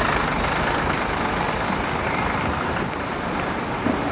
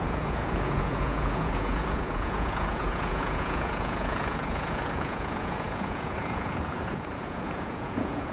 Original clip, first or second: first